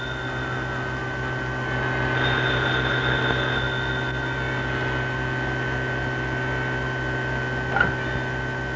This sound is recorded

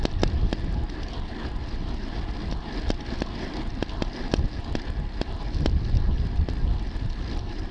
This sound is recorded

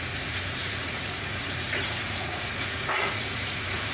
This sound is remade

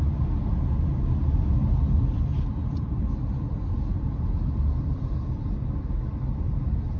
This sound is recorded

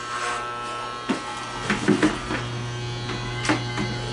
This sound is recorded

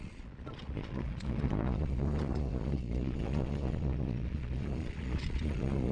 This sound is remade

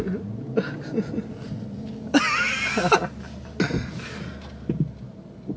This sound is recorded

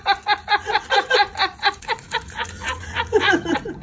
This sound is remade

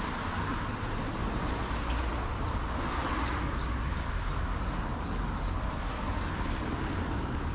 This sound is recorded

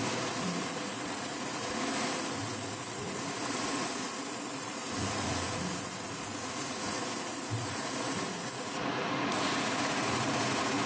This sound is remade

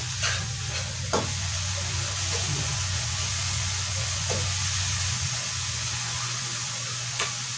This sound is remade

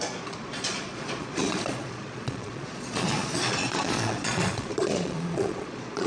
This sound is remade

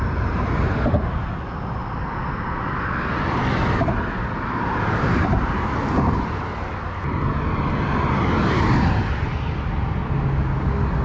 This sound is recorded